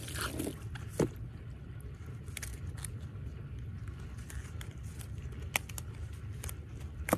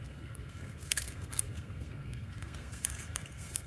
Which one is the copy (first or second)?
second